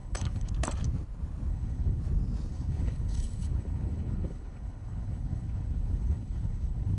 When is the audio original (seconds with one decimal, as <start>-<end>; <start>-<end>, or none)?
0.5-1.5; 2.0-2.5

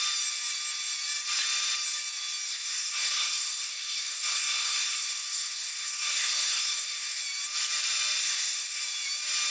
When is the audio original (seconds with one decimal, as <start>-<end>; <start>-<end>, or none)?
0.0-2.5; 7.2-8.2; 8.8-9.5

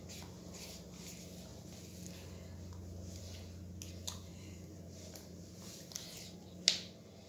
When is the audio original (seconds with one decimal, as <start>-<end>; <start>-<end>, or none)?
0.0-4.3; 5.9-7.3

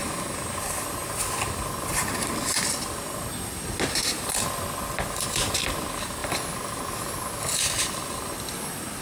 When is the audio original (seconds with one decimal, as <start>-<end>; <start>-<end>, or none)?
0.0-9.0

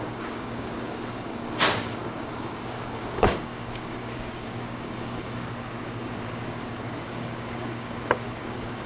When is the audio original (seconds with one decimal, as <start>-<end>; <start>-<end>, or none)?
none

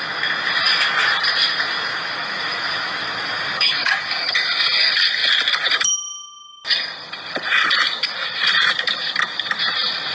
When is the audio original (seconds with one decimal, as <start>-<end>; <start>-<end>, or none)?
0.0-1.9; 4.1-10.1

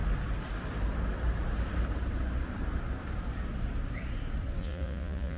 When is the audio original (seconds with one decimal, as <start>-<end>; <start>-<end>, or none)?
0.0-4.6